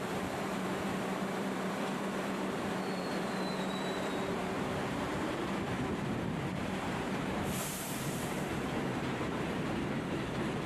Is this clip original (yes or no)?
no